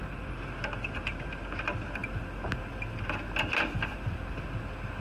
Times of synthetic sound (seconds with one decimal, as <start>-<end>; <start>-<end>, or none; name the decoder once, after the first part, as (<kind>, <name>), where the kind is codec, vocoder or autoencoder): none